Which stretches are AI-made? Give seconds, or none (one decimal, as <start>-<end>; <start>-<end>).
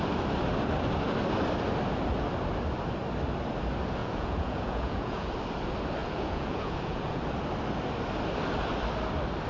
4.0-5.3; 6.0-7.2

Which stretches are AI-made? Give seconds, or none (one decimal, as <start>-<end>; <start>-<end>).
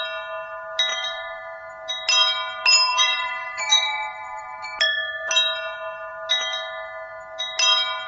0.9-1.7; 2.9-4.6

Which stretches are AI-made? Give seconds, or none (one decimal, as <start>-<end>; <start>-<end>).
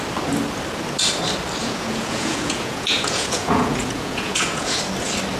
1.6-4.8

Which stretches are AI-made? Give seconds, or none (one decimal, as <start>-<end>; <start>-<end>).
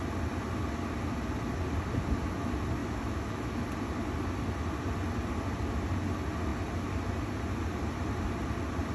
2.8-3.5